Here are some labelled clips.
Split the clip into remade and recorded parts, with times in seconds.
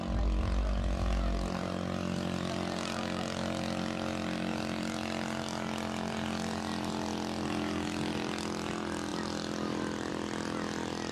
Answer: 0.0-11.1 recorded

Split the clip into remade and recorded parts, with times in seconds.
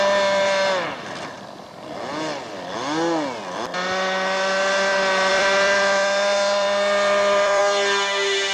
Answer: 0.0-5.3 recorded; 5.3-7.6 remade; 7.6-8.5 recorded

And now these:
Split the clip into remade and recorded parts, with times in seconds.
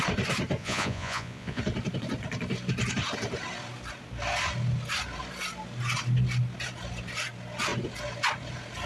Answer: 0.0-0.6 recorded; 0.6-1.6 remade; 1.6-8.9 recorded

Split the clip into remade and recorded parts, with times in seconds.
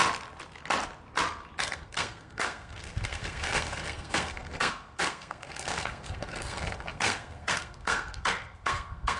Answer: 0.0-1.6 recorded; 1.6-9.2 remade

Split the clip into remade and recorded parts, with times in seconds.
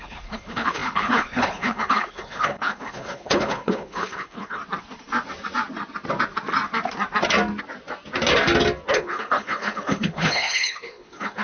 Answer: 0.0-4.6 remade; 4.6-8.9 recorded; 8.9-11.4 remade